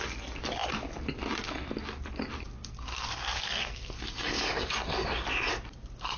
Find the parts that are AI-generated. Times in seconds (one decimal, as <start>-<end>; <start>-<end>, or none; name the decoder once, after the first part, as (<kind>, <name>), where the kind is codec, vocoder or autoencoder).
2.6-4.0 (codec, SNAC)